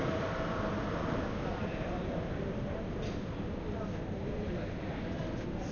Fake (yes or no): no